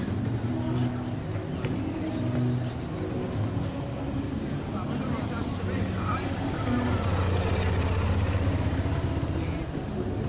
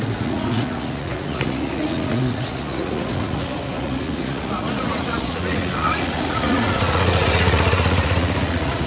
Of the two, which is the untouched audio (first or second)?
first